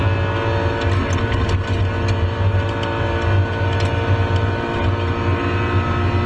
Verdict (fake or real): real